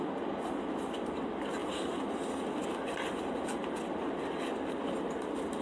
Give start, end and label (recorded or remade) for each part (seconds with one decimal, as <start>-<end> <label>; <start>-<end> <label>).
0.0-5.6 recorded